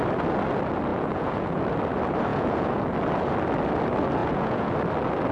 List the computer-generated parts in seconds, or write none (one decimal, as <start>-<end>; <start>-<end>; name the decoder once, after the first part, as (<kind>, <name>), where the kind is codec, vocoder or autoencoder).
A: 0.9-1.6 (vocoder, Vocos); 2.3-2.8; 4.2-4.7